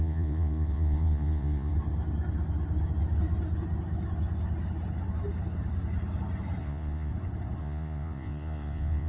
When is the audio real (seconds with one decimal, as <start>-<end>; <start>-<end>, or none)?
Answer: 1.7-6.6; 7.1-7.6